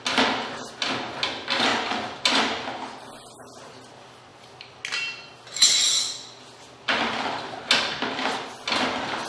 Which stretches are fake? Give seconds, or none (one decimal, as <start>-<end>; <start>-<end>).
1.7-2.2